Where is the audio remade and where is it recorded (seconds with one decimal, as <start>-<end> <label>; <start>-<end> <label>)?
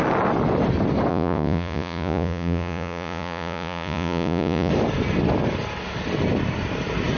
0.0-1.1 recorded; 1.1-4.7 remade; 4.7-7.2 recorded